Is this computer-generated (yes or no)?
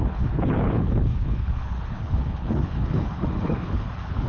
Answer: yes